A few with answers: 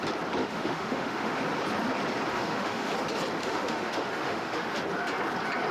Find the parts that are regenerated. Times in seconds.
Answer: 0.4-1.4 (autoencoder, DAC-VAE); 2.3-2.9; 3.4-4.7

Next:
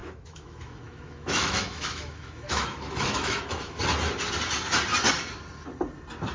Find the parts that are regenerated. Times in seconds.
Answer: 0.0-3.8 (autoencoder, DAC-VAE)

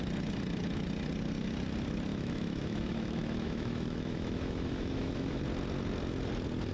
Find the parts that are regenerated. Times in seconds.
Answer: 2.1-5.4 (autoencoder, DAC-VAE)

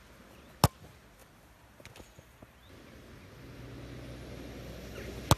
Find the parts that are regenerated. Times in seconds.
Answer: none

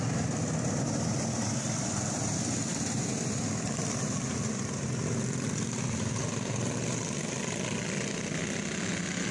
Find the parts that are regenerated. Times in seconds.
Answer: none

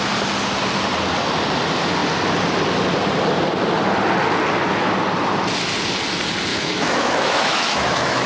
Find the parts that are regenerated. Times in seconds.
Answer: 6.5-8.3 (autoencoder, DAC-VAE)

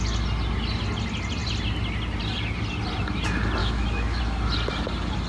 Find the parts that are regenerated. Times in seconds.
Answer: 3.6-4.2 (autoencoder, DAC-VAE)

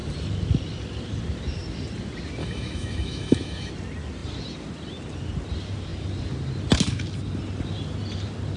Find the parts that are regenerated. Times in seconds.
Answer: 2.4-3.7 (autoencoder, DAC-VAE)